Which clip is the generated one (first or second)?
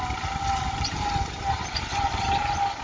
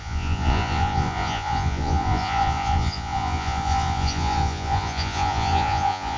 second